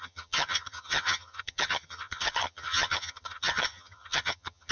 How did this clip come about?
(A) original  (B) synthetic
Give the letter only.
B